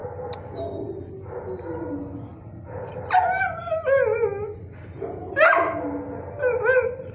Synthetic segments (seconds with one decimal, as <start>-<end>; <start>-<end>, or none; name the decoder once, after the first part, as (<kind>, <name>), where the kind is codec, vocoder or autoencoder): none